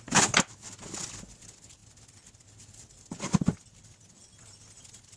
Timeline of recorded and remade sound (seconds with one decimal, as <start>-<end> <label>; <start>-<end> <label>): 0.0-5.2 recorded